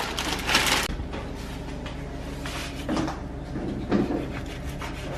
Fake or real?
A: real